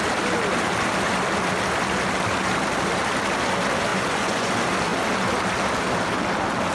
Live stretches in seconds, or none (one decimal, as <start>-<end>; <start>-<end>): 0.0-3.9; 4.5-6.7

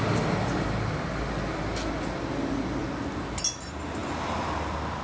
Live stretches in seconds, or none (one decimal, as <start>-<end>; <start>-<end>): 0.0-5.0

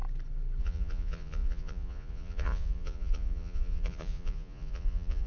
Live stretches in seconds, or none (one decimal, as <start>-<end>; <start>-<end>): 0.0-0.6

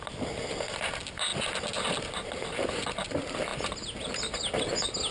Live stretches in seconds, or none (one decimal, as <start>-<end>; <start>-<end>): 0.0-5.1

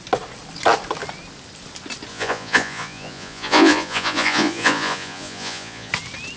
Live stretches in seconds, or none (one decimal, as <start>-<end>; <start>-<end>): 0.0-2.1; 5.9-6.4